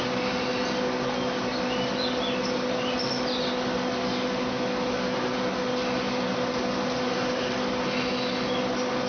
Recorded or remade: recorded